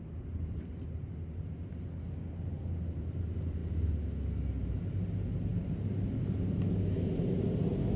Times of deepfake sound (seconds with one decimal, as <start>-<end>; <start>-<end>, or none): none